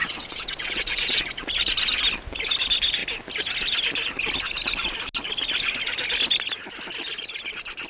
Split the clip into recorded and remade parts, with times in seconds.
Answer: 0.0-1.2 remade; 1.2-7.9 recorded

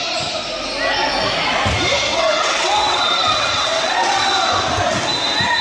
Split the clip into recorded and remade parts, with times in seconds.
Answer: 0.0-2.1 recorded; 2.1-4.3 remade; 4.3-5.6 recorded